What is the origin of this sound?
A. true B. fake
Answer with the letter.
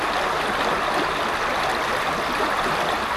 A